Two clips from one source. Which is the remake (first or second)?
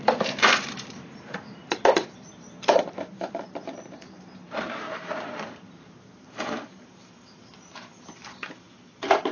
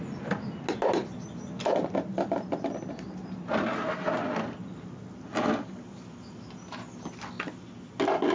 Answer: first